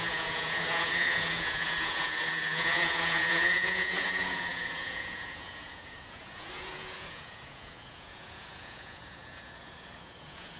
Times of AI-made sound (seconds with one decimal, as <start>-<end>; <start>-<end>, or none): 0.0-10.6